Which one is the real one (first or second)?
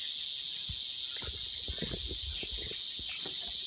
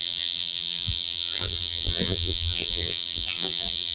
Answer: first